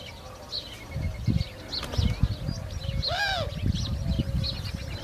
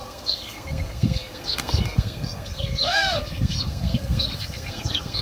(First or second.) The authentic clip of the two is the first